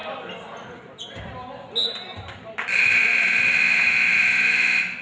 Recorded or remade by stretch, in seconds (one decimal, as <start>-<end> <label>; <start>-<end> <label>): 0.0-5.0 recorded